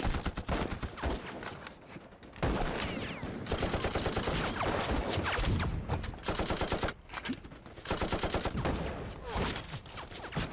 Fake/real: real